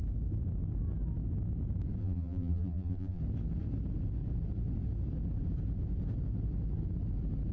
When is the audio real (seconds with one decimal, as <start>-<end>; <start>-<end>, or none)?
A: 0.0-2.0; 3.2-7.5